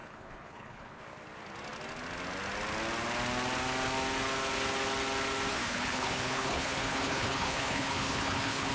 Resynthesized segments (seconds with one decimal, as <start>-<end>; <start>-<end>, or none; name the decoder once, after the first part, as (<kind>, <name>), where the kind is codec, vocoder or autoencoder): 0.0-1.0 (codec, HILCodec); 5.5-8.7